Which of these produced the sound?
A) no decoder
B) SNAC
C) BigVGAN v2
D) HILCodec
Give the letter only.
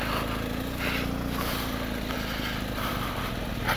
A